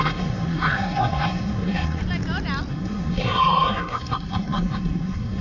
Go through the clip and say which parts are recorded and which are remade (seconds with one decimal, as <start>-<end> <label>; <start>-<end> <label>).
0.0-2.0 remade; 2.0-2.7 recorded; 2.7-5.4 remade

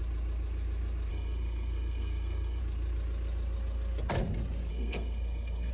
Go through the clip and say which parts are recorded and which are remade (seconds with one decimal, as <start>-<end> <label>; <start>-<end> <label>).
0.0-1.1 recorded; 1.1-2.6 remade; 2.6-4.7 recorded; 4.7-5.7 remade

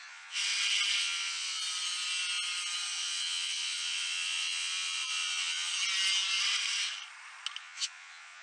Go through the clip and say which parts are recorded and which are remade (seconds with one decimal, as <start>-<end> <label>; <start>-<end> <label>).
0.0-0.4 remade; 0.4-1.0 recorded; 1.0-1.6 remade; 1.6-3.0 recorded; 3.0-5.7 remade; 5.7-7.6 recorded; 7.6-8.4 remade